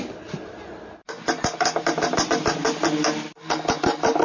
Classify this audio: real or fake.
real